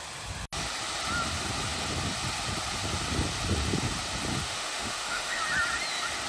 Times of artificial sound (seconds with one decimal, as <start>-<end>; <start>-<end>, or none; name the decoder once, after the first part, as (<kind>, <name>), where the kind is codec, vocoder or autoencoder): 4.3-5.4 (autoencoder, DAC-VAE)